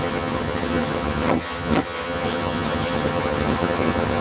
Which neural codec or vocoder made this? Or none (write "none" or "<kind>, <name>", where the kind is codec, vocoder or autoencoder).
vocoder, HiFi-GAN